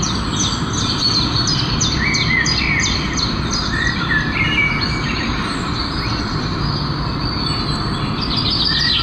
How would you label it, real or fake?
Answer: real